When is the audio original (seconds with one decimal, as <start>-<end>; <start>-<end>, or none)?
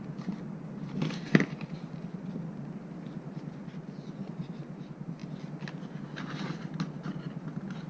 0.0-7.9